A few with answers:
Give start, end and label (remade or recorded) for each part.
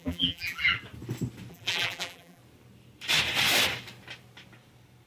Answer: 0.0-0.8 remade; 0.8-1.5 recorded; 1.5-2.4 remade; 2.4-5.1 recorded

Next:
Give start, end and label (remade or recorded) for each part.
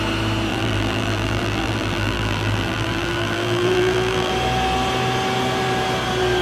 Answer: 0.0-0.5 recorded; 0.5-4.3 remade; 4.3-6.4 recorded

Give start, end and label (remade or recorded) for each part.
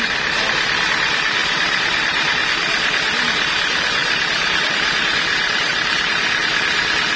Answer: 0.0-1.4 recorded; 1.4-2.3 remade; 2.3-4.0 recorded; 4.0-4.7 remade; 4.7-5.7 recorded; 5.7-6.4 remade; 6.4-7.2 recorded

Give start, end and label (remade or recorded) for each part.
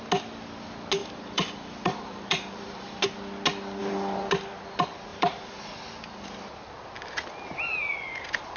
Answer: 0.0-1.0 recorded; 1.0-3.0 remade; 3.0-3.8 recorded; 3.8-4.3 remade; 4.3-5.1 recorded; 5.1-5.6 remade; 5.6-8.6 recorded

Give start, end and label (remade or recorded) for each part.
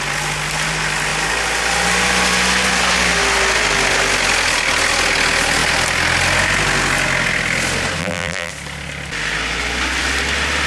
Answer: 0.0-8.0 recorded; 8.0-8.5 remade; 8.5-10.7 recorded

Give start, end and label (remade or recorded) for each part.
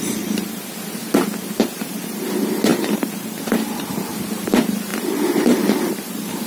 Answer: 0.0-6.5 remade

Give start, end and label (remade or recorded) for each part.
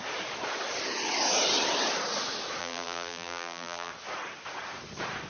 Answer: 0.0-2.6 recorded; 2.6-3.9 remade; 3.9-5.3 recorded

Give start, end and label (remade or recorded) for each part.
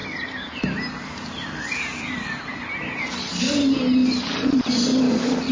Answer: 0.0-5.5 recorded